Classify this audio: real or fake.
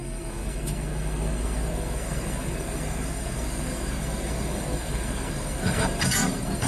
fake